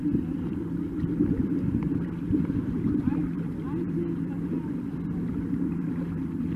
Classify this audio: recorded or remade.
remade